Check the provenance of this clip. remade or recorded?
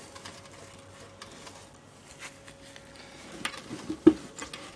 recorded